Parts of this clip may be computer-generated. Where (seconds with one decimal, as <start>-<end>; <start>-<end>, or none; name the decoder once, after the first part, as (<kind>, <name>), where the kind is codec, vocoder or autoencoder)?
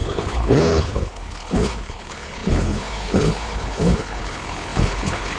0.0-5.4 (codec, HILCodec)